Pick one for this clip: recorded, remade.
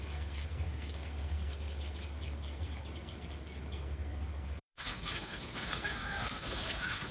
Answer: remade